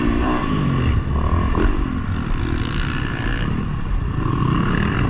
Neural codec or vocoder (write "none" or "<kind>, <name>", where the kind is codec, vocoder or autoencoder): none